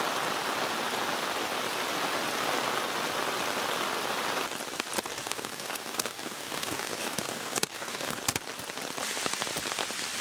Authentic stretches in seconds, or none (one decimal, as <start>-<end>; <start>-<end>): 0.0-5.1; 8.2-10.2

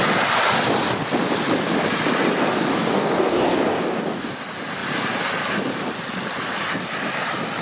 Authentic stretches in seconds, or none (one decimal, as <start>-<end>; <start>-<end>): 0.0-2.7; 4.3-7.6